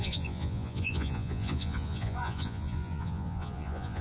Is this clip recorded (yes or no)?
no